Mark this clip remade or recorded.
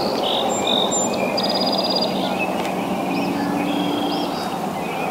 recorded